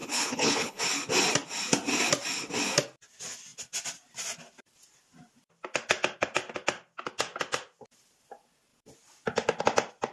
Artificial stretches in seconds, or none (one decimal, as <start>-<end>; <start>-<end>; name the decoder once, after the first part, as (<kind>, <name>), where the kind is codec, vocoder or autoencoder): 0.0-0.8 (codec, HILCodec)